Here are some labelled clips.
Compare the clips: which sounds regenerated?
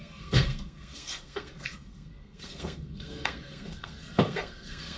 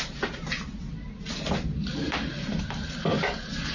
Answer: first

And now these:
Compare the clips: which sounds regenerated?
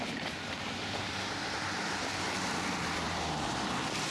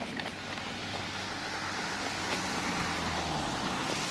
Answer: first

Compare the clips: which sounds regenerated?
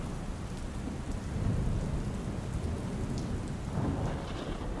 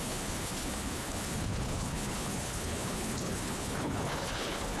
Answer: second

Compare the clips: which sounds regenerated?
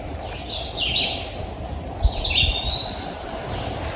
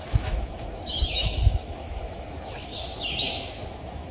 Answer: second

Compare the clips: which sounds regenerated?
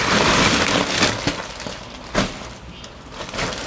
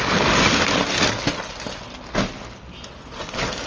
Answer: first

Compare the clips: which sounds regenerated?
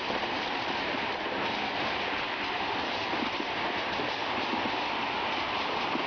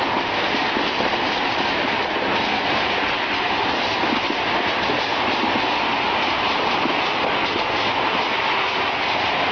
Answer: first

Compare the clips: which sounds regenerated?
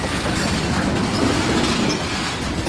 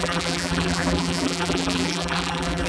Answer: second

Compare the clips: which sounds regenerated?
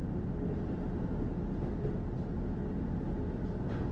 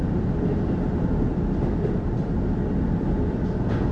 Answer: second